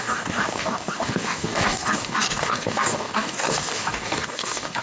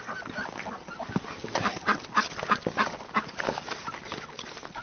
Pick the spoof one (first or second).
first